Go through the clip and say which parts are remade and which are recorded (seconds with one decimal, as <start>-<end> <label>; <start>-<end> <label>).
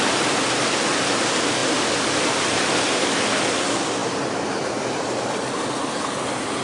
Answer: 0.0-6.6 recorded